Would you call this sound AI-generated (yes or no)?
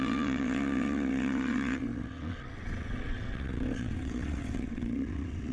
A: yes